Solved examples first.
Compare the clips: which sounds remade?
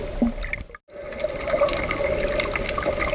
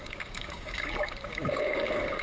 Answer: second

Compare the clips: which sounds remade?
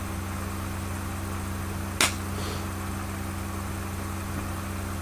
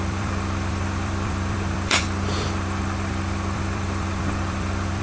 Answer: second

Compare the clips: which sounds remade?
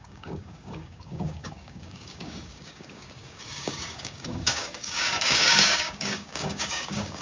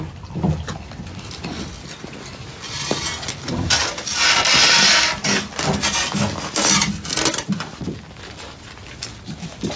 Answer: first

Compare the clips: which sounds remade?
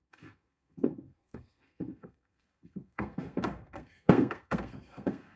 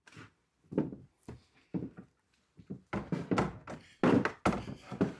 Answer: first